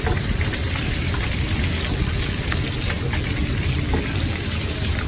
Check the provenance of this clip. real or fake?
real